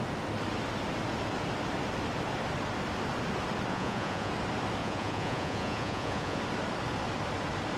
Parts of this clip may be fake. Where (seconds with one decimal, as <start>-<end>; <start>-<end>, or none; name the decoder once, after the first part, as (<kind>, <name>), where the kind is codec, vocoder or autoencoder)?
3.7-4.3 (vocoder, Vocos); 4.8-6.4